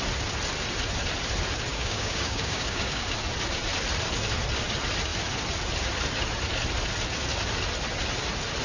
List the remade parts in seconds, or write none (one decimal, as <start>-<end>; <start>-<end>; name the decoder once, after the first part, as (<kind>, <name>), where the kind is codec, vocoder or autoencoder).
1.7-3.1 (codec, DAC)